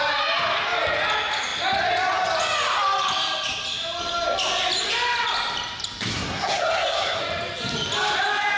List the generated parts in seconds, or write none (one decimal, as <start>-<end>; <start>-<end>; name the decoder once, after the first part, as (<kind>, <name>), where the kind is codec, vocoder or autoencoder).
6.1-7.2 (codec, SNAC)